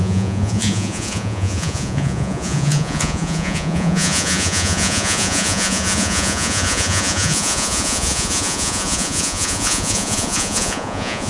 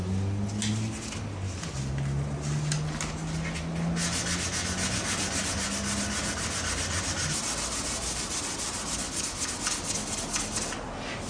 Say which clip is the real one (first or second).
second